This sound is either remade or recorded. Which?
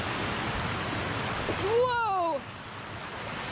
recorded